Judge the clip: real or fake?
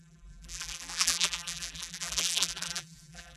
fake